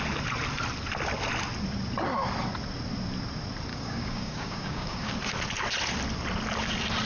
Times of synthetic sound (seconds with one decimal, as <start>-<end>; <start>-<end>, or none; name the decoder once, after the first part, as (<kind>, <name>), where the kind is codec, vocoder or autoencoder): 3.7-5.1 (codec, DAC)